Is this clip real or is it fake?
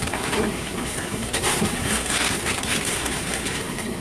fake